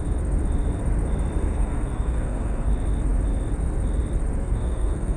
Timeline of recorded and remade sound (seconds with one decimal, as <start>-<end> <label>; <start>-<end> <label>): 0.0-1.4 recorded; 1.4-2.7 remade; 2.7-4.4 recorded; 4.4-5.2 remade